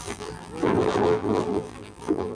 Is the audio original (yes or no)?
no